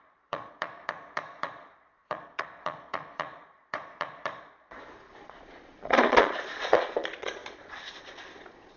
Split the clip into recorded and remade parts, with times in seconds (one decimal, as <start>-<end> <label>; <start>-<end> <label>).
0.0-8.8 remade